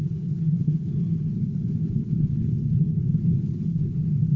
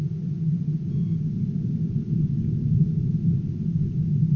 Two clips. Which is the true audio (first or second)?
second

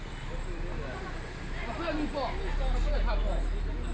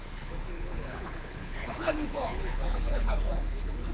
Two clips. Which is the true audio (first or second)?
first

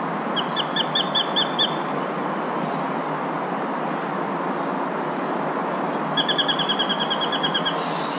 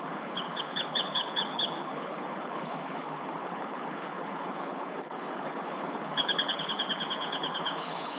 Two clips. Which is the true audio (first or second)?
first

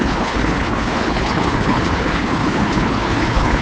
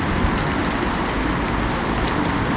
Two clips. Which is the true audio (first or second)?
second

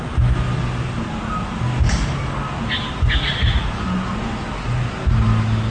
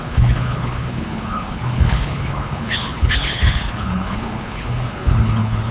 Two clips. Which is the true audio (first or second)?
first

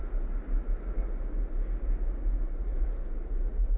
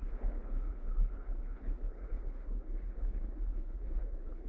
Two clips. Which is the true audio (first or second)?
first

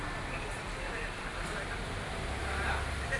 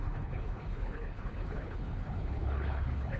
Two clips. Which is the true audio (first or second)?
first